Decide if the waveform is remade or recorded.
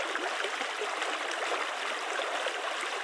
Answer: recorded